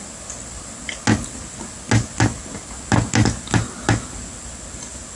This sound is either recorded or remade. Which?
recorded